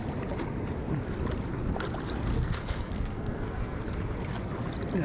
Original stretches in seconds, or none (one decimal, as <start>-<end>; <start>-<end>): 0.0-2.3; 3.8-5.0